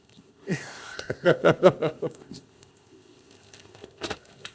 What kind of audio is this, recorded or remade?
remade